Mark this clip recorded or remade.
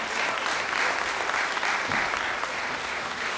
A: recorded